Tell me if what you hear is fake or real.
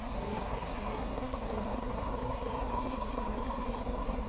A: fake